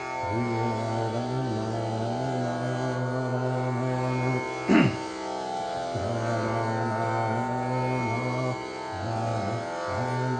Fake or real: real